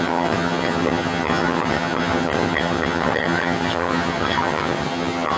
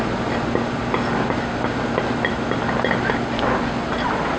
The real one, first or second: second